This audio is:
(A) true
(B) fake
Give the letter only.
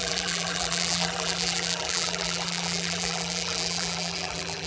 B